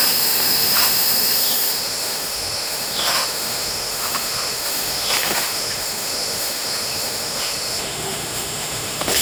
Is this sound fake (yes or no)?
yes